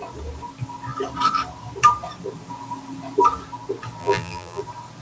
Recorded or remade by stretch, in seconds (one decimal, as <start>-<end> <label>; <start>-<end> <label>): 0.0-4.0 recorded; 4.0-4.6 remade; 4.6-5.0 recorded